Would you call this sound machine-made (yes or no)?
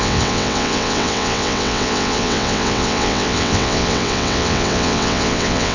yes